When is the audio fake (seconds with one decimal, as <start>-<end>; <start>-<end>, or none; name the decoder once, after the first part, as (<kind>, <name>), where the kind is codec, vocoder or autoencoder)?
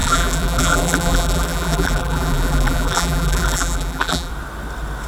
0.0-4.3 (vocoder, BigVGAN v2)